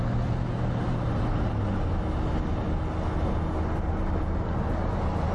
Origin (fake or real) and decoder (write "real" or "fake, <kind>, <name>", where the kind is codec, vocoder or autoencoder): real